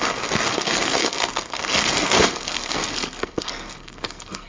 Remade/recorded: remade